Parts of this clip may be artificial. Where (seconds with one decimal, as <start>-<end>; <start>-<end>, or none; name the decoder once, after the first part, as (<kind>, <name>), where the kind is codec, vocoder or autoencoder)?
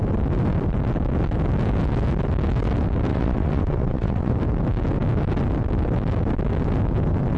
3.1-4.3 (vocoder, WaveNeXt)